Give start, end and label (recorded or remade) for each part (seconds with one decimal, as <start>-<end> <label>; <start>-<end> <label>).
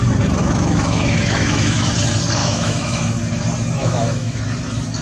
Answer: 0.0-0.4 recorded; 0.4-1.9 remade; 1.9-2.4 recorded; 2.4-3.1 remade; 3.1-3.8 recorded; 3.8-4.4 remade; 4.4-5.0 recorded